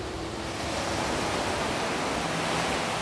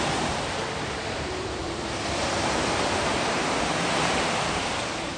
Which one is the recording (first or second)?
first